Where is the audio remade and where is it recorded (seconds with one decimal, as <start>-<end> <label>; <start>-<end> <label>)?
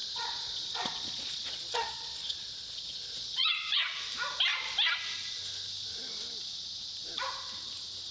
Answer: 0.0-4.0 remade; 4.0-8.1 recorded